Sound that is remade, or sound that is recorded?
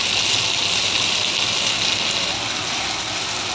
recorded